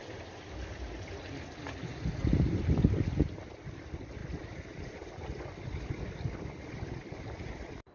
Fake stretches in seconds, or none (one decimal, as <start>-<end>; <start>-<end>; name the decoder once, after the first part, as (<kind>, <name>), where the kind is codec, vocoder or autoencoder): none